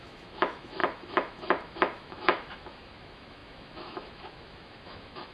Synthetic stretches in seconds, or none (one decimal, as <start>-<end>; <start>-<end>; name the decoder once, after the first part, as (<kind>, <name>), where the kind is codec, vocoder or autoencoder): 0.0-5.3 (autoencoder, DAC-VAE)

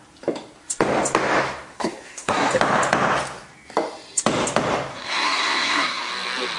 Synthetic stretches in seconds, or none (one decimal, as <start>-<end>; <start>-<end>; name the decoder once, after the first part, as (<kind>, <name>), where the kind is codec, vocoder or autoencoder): 1.7-2.5 (codec, SNAC); 4.9-6.1

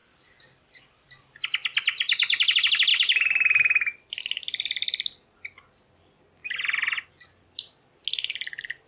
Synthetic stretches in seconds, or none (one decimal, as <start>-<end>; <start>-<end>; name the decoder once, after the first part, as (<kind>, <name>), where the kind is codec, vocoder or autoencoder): 0.0-1.4 (vocoder, BigVGAN v2)

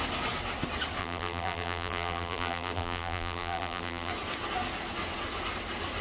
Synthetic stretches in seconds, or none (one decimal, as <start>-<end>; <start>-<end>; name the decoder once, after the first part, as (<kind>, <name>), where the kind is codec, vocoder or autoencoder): 1.0-4.1 (vocoder, BigVGAN v2)

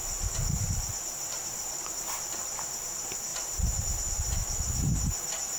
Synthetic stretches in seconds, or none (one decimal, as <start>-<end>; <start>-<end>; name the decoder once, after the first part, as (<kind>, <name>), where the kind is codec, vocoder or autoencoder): 0.6-5.6 (vocoder, BigVGAN v2)

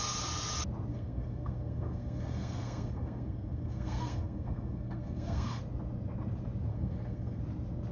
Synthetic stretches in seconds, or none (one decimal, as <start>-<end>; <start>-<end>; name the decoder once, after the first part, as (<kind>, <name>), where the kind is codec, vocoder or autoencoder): 0.9-5.6 (codec, SNAC); 6.7-7.4